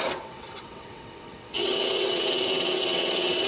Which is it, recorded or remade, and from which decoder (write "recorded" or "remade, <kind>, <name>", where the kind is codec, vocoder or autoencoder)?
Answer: remade, vocoder, WaveNeXt